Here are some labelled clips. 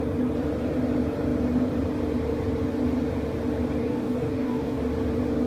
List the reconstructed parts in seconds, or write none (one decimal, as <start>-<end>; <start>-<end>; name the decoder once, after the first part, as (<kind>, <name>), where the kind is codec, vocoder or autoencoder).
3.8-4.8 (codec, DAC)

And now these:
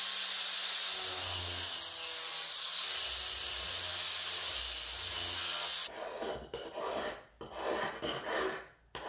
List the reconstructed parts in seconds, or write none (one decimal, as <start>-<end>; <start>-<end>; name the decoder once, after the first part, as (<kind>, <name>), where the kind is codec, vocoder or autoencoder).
none

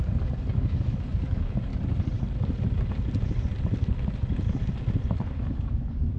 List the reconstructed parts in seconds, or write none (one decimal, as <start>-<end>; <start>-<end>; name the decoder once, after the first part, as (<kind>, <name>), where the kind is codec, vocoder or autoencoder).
0.0-1.7 (codec, DAC); 5.3-6.2